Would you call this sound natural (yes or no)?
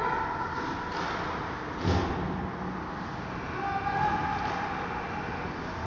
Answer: yes